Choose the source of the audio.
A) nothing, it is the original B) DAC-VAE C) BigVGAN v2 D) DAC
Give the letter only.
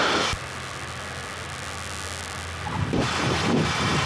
A